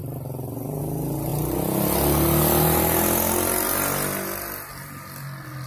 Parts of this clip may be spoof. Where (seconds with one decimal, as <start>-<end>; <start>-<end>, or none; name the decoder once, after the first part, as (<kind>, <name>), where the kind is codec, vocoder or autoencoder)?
none